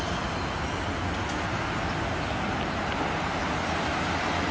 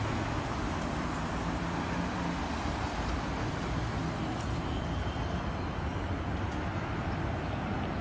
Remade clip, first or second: second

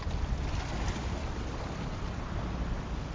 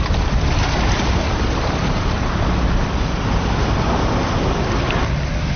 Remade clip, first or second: second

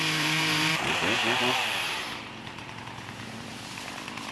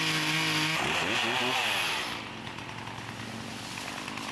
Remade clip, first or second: first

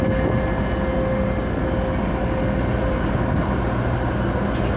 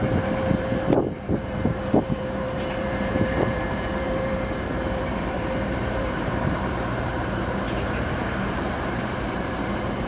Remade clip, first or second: second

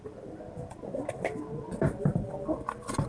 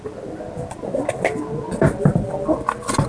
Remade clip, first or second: first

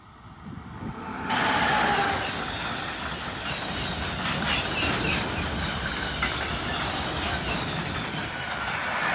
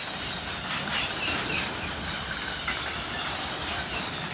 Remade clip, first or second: second